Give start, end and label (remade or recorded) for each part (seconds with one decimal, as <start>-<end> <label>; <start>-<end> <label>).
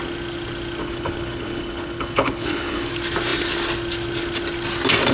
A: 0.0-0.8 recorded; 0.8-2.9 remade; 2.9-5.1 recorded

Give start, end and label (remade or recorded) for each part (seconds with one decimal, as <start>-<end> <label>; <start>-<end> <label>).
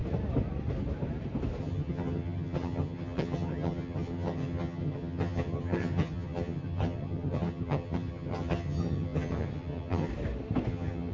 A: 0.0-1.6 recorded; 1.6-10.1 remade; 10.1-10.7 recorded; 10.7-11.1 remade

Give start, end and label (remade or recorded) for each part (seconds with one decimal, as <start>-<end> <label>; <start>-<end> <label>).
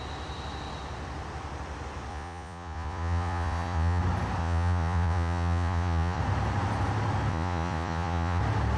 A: 0.0-2.1 recorded; 2.1-4.0 remade; 4.0-4.4 recorded; 4.4-6.2 remade; 6.2-7.3 recorded; 7.3-8.4 remade; 8.4-8.8 recorded